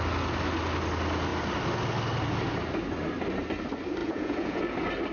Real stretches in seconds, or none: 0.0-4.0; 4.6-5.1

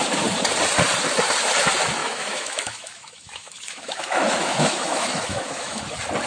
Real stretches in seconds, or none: 0.0-2.0; 5.8-6.3

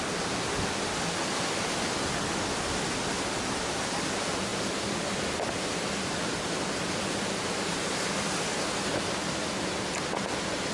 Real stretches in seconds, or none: 0.0-10.7